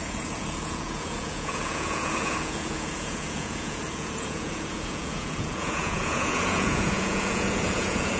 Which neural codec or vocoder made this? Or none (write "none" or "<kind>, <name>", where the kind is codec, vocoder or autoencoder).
vocoder, Vocos